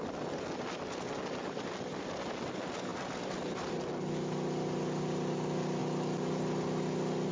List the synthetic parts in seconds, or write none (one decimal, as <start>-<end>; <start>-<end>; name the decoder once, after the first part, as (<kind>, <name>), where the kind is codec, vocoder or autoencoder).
2.9-3.7 (vocoder, BigVGAN v2)